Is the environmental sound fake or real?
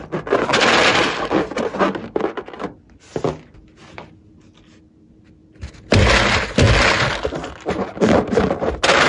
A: real